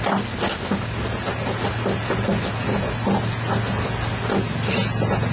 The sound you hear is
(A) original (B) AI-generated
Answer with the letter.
A